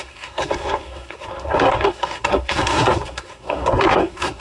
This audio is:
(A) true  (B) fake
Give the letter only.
B